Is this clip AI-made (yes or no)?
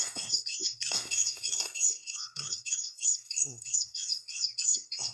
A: yes